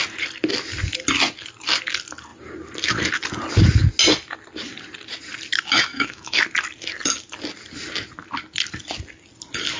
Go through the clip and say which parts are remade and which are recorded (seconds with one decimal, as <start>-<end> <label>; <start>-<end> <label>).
0.0-5.9 recorded; 5.9-6.4 remade; 6.4-9.8 recorded